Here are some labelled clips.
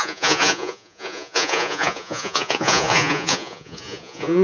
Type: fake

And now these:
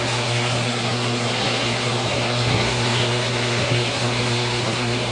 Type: fake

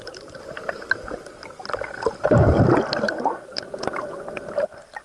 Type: real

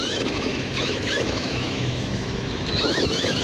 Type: fake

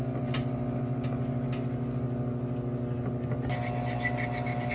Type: real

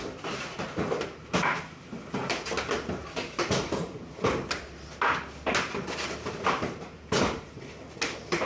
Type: real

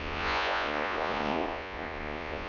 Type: fake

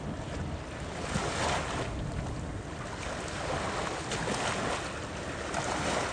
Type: real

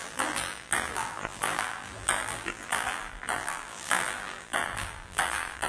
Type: fake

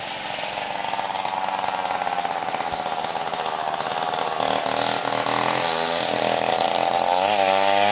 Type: real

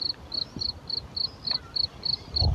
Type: real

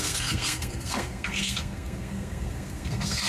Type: fake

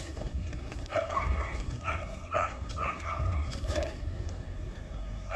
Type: fake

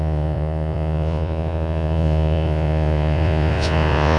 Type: fake